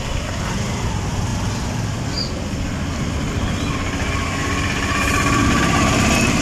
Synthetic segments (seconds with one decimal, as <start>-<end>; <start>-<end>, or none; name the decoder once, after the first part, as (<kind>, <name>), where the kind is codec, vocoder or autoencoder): 1.3-2.0 (vocoder, BigVGAN v2)